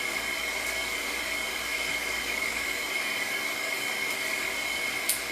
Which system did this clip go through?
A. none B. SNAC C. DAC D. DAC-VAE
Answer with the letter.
C